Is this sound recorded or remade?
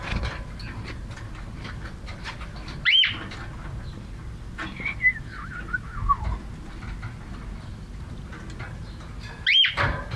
recorded